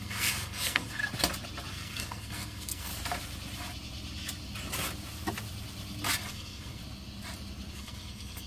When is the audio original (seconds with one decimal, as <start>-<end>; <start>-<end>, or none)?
1.0-1.7; 2.9-6.3; 6.8-7.7